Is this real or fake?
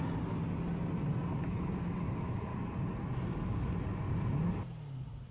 real